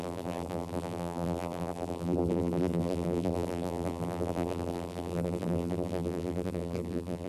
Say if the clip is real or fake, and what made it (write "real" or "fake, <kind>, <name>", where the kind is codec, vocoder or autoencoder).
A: fake, vocoder, BigVGAN v2